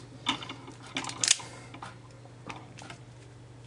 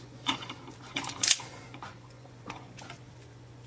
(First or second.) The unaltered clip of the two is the first